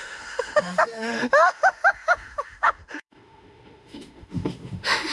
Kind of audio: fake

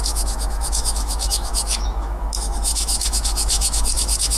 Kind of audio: fake